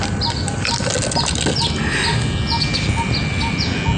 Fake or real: real